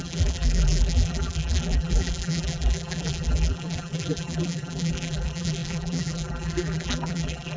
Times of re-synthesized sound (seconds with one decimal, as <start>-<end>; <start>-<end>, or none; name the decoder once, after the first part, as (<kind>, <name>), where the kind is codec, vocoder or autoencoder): 0.0-7.6 (vocoder, BigVGAN v2)